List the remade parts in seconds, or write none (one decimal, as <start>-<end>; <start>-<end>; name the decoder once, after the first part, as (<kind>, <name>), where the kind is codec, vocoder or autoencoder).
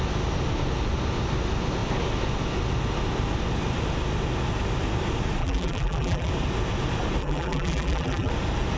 5.4-6.3 (vocoder, BigVGAN v2); 7.2-8.3